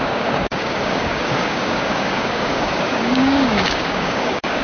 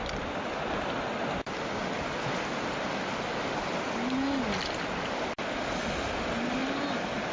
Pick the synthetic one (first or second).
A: first